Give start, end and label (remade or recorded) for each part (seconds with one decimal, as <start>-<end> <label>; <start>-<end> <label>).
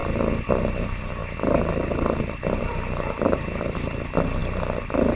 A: 0.0-5.2 remade